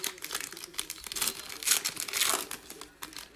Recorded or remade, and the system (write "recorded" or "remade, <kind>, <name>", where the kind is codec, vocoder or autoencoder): recorded